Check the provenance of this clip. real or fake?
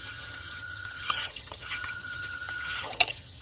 fake